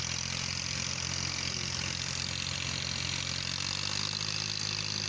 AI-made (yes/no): no